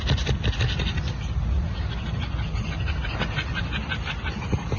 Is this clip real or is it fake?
real